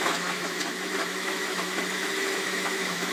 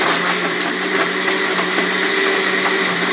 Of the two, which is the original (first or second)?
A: second